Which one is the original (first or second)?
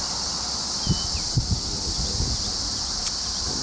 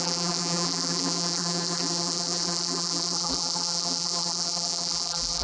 first